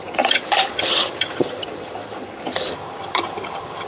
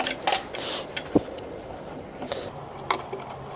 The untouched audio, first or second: second